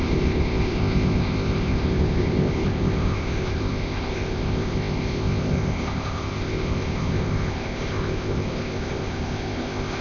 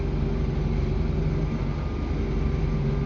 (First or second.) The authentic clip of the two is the second